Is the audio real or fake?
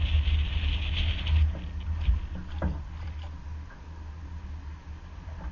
real